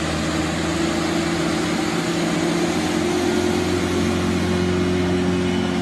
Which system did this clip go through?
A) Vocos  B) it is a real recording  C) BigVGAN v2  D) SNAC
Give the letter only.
B